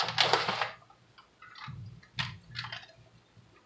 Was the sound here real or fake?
real